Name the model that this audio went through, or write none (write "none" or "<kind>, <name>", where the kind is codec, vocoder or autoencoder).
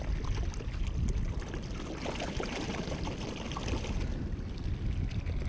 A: none